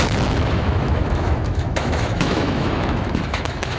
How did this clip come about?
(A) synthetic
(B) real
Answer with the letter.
A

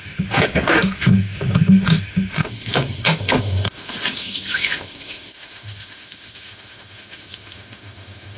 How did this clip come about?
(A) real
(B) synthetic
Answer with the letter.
B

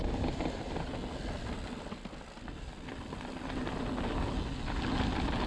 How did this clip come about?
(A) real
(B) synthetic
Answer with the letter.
A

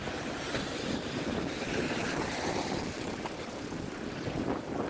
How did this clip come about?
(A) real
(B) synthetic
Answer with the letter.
A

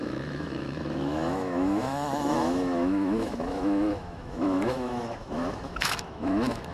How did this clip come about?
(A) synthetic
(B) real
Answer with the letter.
A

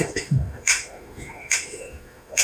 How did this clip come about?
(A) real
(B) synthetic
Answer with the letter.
B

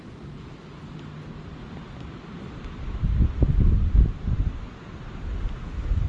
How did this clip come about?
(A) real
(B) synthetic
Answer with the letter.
A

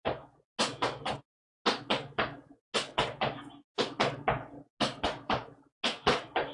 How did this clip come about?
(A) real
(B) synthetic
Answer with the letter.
A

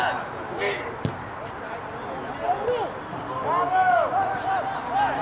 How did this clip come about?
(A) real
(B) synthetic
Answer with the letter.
A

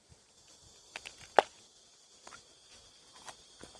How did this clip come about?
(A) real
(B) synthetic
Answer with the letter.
A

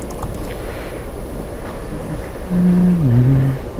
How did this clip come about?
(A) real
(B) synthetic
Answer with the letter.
A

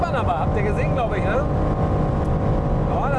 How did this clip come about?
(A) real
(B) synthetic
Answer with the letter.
A